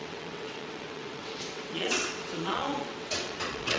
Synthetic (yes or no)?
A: yes